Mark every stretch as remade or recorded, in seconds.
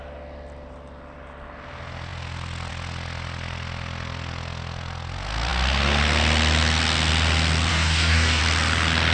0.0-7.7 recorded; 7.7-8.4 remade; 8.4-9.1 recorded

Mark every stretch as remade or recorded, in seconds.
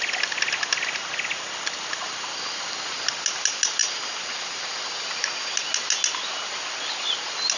0.0-7.6 recorded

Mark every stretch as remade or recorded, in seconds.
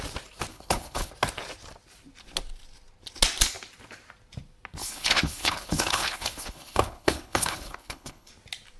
0.0-0.5 recorded; 0.5-1.1 remade; 1.1-4.8 recorded; 4.8-8.3 remade; 8.3-8.8 recorded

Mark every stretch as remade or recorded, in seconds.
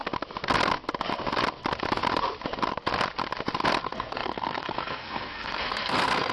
0.0-3.8 recorded; 3.8-6.3 remade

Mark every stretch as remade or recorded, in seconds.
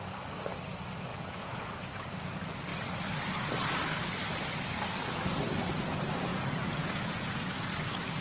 0.0-1.1 recorded; 1.1-1.7 remade; 1.7-6.3 recorded; 6.3-7.7 remade; 7.7-8.2 recorded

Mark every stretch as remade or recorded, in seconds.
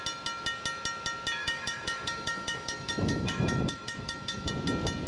0.0-1.4 recorded; 1.4-4.5 remade; 4.5-5.1 recorded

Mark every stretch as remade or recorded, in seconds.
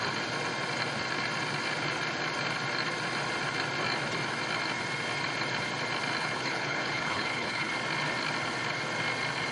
0.0-6.2 recorded; 6.2-7.7 remade; 7.7-9.5 recorded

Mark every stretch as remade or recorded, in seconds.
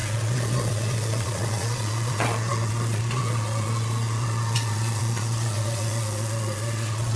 0.0-7.2 remade